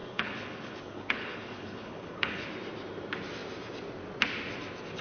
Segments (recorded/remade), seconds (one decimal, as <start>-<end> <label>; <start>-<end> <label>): 0.0-2.5 remade; 2.5-5.0 recorded